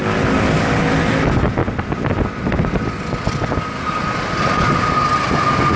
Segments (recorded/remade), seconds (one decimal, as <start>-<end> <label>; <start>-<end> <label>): 0.0-5.8 recorded